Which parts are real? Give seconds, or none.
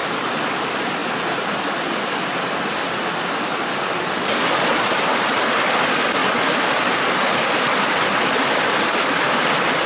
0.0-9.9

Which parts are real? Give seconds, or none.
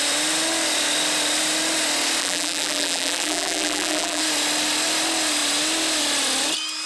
0.0-2.2; 4.2-6.9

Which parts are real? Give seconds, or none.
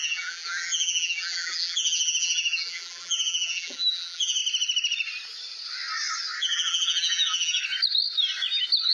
4.4-6.4; 7.6-8.9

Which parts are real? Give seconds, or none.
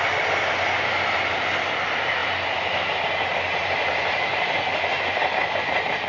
0.0-6.1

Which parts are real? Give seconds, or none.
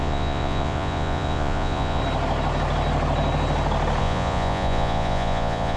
2.0-4.0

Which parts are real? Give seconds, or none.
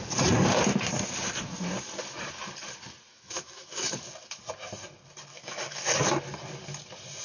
0.0-3.1; 4.0-5.3; 5.9-7.2